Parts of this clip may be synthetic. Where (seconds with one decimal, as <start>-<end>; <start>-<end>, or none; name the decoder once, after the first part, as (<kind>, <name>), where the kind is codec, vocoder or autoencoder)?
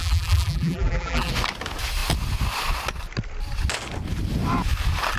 0.0-1.3 (vocoder, BigVGAN v2)